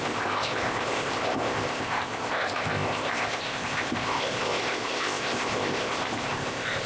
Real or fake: fake